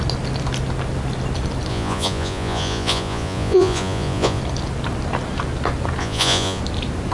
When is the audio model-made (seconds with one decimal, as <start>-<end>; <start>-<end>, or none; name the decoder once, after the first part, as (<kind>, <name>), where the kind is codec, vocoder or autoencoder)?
1.7-4.4 (vocoder, Vocos); 6.0-6.6

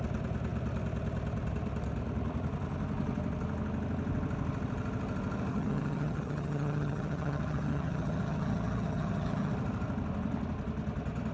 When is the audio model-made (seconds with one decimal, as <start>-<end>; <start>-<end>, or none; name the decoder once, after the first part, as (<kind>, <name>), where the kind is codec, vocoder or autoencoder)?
5.5-9.5 (vocoder, HiFi-GAN)

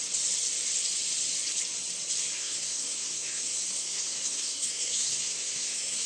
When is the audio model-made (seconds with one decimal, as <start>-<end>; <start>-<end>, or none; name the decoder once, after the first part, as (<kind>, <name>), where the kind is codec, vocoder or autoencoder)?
2.4-6.1 (codec, SNAC)

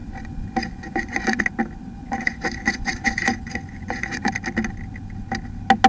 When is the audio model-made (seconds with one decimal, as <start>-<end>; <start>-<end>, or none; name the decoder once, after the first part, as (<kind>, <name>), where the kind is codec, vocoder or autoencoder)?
0.0-1.4 (vocoder, Vocos); 2.0-4.3

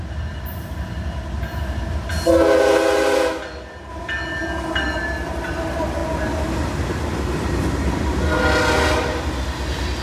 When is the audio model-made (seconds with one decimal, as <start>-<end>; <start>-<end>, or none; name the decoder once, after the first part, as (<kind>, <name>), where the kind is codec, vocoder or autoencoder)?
none